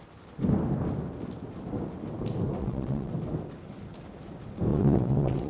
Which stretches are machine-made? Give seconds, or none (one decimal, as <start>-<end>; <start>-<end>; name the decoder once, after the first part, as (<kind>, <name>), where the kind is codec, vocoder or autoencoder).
2.6-3.1 (vocoder, WaveNeXt); 4.7-5.5